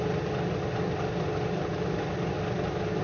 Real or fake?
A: real